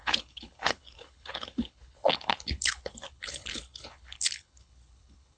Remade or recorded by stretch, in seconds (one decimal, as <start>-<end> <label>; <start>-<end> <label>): 0.0-5.4 remade

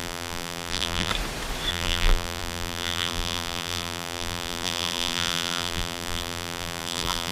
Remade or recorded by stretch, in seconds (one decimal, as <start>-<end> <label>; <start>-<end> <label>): 0.0-1.1 remade; 1.1-1.7 recorded; 1.7-7.3 remade

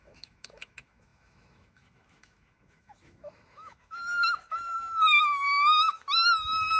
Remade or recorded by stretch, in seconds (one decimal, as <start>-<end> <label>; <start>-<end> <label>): 0.0-6.8 remade